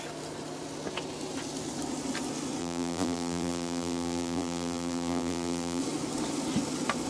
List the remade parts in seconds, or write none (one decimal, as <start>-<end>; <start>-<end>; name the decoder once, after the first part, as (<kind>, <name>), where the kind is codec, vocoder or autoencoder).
2.6-5.8 (vocoder, BigVGAN v2)